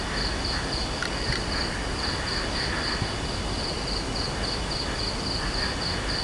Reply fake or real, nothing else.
real